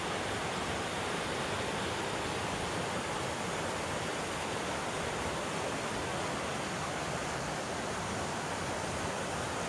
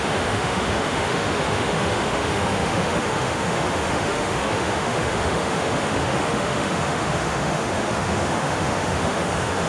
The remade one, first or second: second